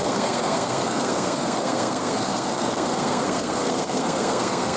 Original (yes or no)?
no